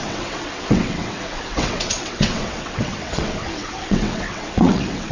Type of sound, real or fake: fake